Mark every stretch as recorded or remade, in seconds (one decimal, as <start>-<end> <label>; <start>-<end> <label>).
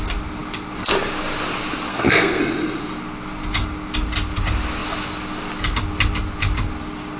0.0-1.9 recorded; 1.9-2.4 remade; 2.4-7.2 recorded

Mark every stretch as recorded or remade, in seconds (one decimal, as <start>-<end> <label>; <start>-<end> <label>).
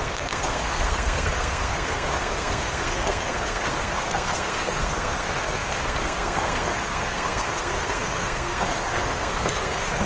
0.0-10.1 remade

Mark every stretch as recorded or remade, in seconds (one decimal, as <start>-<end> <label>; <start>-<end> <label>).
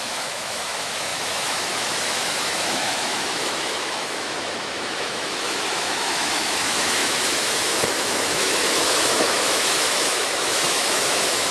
0.0-11.5 remade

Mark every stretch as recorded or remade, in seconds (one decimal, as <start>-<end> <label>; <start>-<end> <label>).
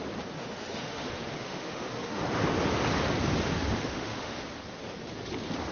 0.0-0.4 recorded; 0.4-2.2 remade; 2.2-3.5 recorded; 3.5-4.4 remade; 4.4-5.7 recorded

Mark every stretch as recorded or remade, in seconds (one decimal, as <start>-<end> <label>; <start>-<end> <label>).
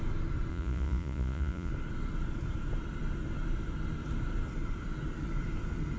0.0-0.5 recorded; 0.5-1.7 remade; 1.7-6.0 recorded